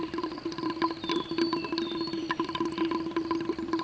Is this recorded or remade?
recorded